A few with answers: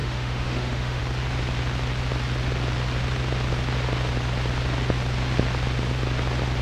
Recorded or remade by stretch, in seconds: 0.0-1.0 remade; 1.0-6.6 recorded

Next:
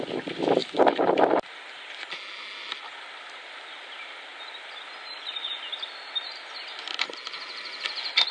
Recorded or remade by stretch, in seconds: 0.0-8.3 recorded

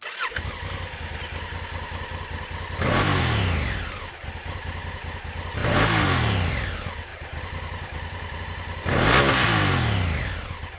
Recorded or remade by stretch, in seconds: 0.0-7.1 recorded; 7.1-8.4 remade; 8.4-10.8 recorded